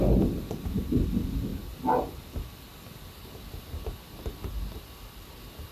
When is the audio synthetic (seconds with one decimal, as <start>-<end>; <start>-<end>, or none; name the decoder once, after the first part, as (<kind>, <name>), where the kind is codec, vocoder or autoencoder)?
none

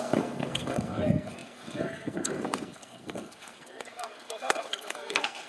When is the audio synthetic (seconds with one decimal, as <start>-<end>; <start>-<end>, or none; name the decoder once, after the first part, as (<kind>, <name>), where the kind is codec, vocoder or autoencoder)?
0.0-5.5 (codec, SNAC)